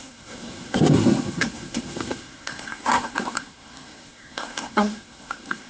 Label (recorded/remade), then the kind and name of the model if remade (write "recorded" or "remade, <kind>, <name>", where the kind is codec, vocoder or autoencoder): remade, codec, SNAC